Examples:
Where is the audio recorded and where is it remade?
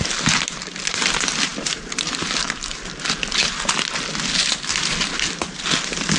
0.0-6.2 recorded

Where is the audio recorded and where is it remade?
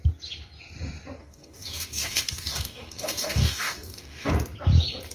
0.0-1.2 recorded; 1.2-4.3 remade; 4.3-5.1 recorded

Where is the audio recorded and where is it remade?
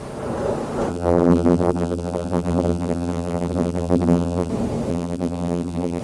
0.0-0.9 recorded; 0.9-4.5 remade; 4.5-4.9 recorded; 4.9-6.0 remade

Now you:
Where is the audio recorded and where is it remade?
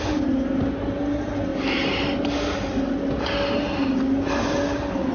0.0-5.1 recorded